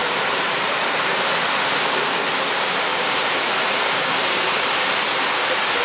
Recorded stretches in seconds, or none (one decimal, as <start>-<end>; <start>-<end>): 1.2-2.9; 5.3-5.8